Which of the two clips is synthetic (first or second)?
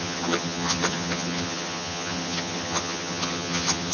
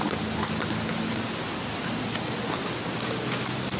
first